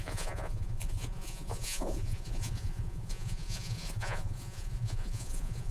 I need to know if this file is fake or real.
fake